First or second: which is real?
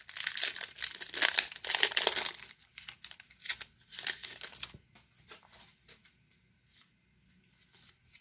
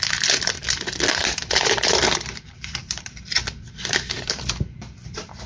first